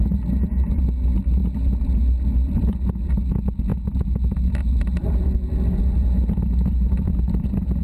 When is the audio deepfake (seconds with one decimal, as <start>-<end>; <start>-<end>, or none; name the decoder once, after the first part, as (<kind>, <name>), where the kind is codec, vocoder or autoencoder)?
none